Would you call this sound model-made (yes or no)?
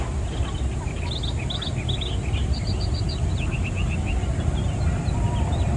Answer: no